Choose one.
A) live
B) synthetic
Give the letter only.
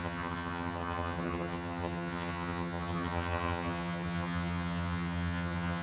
B